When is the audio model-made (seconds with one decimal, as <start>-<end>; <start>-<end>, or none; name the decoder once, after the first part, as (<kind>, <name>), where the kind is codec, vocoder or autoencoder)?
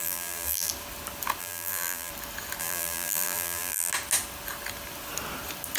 0.0-0.7 (vocoder, BigVGAN v2); 1.4-2.1; 2.6-3.9